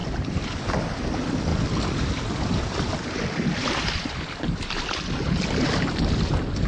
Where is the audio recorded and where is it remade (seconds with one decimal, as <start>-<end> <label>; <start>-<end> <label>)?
0.0-6.7 recorded